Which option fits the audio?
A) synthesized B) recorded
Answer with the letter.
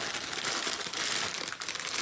B